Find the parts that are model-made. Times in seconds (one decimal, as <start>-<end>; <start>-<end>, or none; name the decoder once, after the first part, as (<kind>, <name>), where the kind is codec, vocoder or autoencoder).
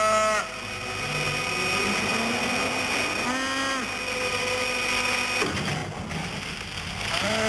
none